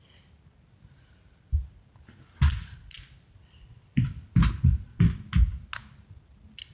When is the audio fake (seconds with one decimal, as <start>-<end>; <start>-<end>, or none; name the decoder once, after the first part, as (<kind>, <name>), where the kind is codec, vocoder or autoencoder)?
none